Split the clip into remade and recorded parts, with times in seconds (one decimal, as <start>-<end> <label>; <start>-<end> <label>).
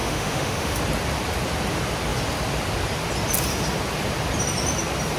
0.0-0.8 remade; 0.8-5.2 recorded